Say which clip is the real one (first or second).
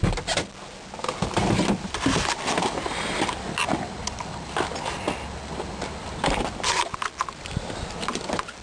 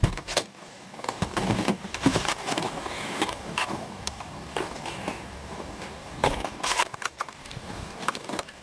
first